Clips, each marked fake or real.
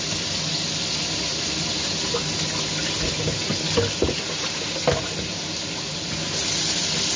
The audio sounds real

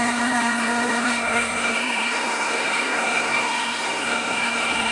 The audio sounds fake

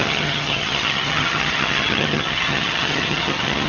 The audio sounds fake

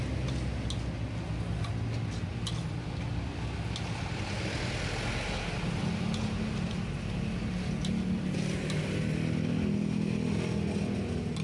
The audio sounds real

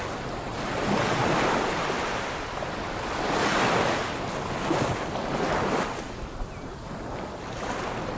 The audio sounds real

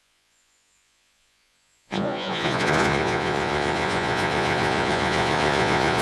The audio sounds fake